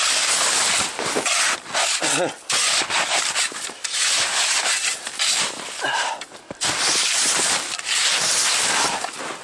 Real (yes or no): yes